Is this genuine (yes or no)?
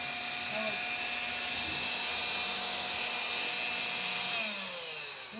yes